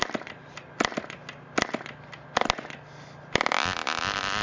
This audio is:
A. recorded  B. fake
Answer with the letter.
A